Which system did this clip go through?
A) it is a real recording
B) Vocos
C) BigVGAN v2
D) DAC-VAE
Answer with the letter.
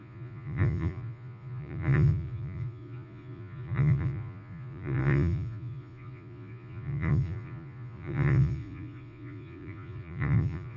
B